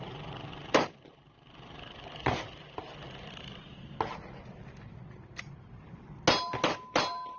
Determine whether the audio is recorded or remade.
recorded